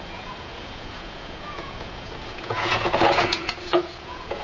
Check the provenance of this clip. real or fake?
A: fake